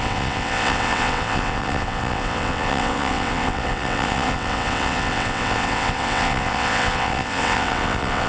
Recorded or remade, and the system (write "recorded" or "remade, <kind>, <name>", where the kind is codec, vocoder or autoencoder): remade, vocoder, WaveNeXt